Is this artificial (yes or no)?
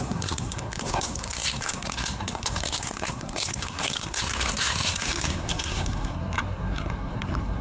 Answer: yes